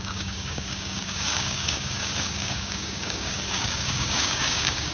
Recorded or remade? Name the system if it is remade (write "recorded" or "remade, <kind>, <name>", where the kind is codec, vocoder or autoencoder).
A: remade, codec, DAC